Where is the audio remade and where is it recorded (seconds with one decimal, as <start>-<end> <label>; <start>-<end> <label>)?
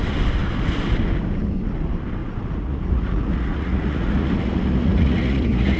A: 0.0-2.2 recorded; 2.2-5.8 remade